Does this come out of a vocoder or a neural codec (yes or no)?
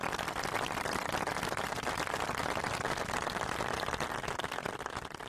no